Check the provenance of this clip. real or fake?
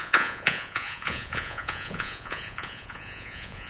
fake